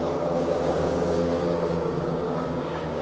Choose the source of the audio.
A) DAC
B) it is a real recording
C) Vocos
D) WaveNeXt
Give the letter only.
A